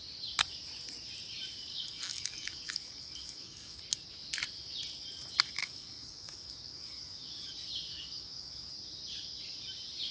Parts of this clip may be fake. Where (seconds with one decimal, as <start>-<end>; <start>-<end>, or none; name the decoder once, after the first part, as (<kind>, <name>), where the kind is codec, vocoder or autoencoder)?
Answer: 1.7-3.8 (codec, DAC); 5.6-7.5; 7.9-8.7